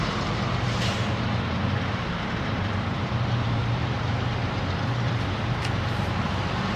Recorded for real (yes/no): no